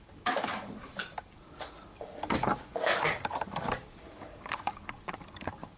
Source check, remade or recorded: remade